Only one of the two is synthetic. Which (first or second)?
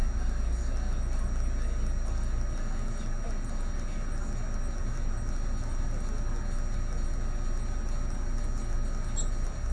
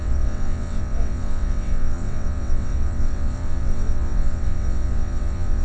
second